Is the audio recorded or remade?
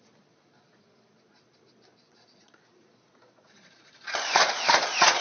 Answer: remade